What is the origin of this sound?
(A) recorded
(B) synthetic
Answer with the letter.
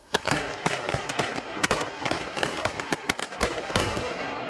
B